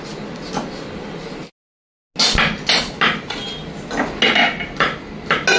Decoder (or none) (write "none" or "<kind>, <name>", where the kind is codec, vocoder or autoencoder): none